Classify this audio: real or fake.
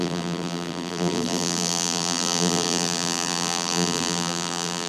fake